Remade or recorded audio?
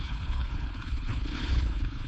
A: remade